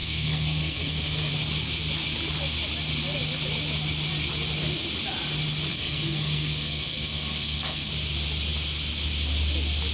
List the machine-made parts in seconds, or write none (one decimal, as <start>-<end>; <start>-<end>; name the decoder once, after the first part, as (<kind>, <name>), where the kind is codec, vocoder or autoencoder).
0.0-1.3 (codec, SNAC); 5.7-7.9